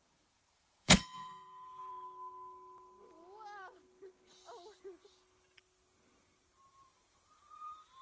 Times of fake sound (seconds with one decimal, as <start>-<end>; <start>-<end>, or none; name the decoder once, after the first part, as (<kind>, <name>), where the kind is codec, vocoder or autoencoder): 0.0-1.9 (vocoder, Vocos); 6.7-8.0